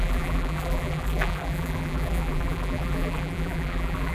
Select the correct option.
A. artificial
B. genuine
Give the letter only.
A